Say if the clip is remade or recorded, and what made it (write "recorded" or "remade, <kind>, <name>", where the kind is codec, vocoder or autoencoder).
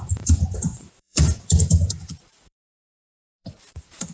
remade, vocoder, BigVGAN v2